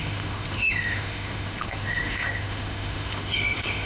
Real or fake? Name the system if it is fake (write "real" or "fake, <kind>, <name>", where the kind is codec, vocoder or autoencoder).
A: fake, autoencoder, DAC-VAE